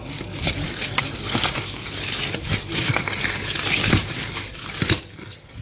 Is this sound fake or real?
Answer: real